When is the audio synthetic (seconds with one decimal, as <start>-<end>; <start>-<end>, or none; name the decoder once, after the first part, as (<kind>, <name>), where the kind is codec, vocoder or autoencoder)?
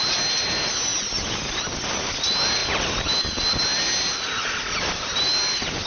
none